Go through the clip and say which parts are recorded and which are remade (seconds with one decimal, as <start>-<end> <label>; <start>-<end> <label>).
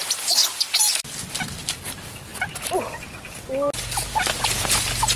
0.0-5.2 recorded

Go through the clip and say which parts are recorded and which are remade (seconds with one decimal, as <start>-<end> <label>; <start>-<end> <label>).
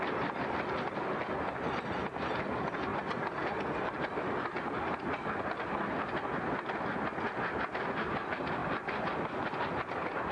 0.0-10.3 recorded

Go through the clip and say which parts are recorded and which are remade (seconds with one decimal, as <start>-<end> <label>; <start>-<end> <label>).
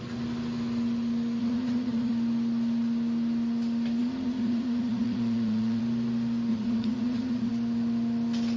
0.0-1.4 recorded; 1.4-2.1 remade; 2.1-4.0 recorded; 4.0-5.8 remade; 5.8-6.5 recorded; 6.5-7.5 remade; 7.5-8.6 recorded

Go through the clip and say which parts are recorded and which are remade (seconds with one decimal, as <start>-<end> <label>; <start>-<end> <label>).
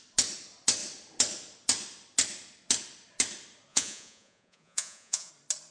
0.0-3.7 recorded; 3.7-5.3 remade; 5.3-5.7 recorded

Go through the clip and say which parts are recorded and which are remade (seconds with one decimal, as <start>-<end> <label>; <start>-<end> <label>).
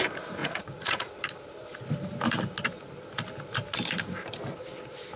0.0-0.4 recorded; 0.4-1.1 remade; 1.1-5.2 recorded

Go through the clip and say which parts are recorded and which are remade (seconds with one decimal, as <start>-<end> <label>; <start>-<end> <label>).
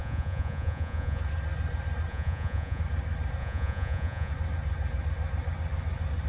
0.0-1.2 remade; 1.2-2.1 recorded; 2.1-2.8 remade; 2.8-3.4 recorded; 3.4-4.3 remade; 4.3-6.3 recorded